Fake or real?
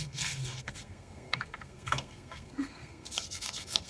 fake